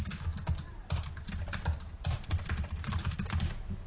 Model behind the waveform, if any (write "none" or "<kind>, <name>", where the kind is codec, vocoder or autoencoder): none